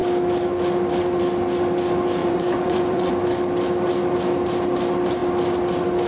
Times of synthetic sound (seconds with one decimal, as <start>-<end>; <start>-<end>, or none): 2.2-3.1